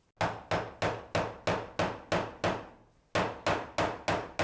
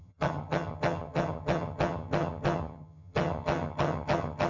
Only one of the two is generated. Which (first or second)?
second